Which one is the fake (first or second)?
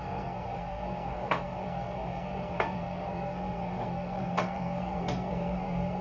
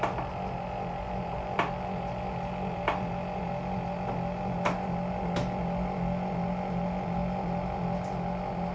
first